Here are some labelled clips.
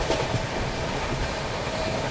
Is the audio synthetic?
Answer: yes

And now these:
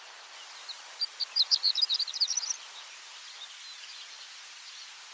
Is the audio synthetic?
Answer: yes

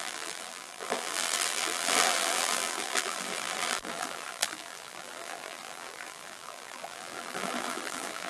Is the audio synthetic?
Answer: yes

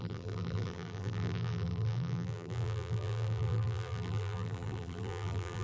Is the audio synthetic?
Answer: yes